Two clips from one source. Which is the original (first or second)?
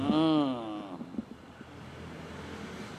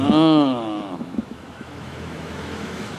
first